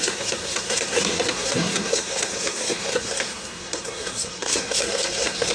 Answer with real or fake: fake